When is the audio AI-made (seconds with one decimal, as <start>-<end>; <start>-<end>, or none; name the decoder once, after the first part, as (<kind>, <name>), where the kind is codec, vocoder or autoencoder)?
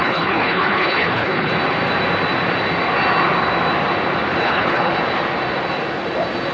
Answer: 0.0-1.5 (codec, HILCodec); 4.4-4.9